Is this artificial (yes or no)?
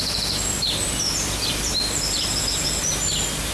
no